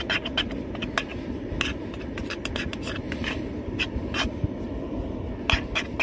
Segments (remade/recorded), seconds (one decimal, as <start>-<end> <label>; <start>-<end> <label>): 0.0-1.1 recorded; 1.1-4.7 remade; 4.7-6.0 recorded